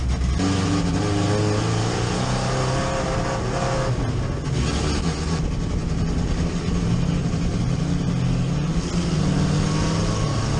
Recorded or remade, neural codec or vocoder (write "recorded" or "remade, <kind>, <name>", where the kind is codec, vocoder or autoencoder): recorded